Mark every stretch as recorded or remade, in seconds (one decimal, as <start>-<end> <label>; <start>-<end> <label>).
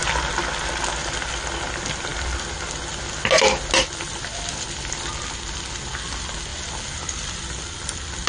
0.0-8.3 recorded